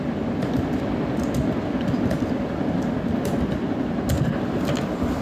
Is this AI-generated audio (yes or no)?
no